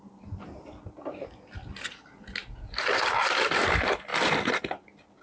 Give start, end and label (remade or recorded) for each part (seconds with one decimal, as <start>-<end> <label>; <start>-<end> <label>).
0.0-5.2 recorded